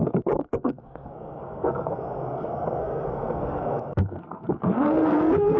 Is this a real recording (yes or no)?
no